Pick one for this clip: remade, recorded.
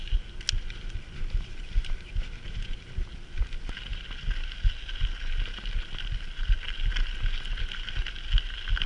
recorded